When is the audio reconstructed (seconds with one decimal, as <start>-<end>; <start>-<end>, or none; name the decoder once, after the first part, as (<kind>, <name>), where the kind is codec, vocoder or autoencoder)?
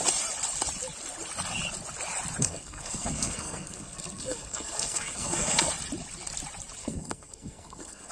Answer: 2.4-5.7 (codec, SNAC); 6.8-8.1